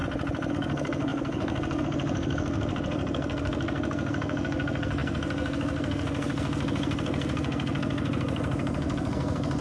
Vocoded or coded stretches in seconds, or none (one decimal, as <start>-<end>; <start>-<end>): 0.5-9.6